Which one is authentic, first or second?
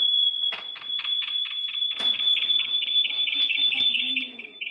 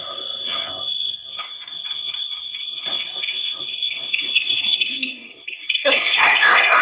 first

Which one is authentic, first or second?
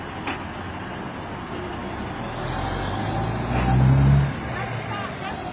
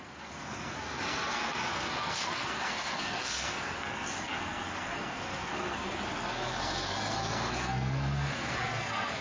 first